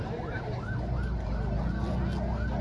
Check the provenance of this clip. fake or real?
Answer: real